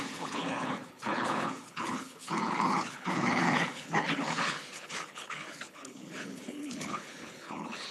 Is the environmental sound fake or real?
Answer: fake